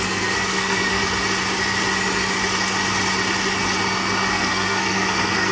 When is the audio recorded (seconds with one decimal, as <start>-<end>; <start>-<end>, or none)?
1.0-4.3